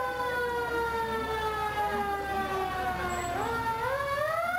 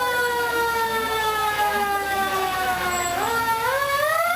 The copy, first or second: second